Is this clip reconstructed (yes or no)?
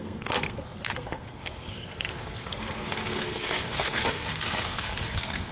yes